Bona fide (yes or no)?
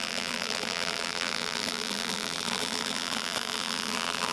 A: no